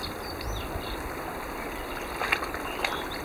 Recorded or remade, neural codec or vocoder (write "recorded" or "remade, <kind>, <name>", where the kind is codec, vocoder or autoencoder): recorded